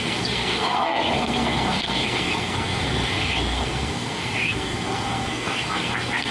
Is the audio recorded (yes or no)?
no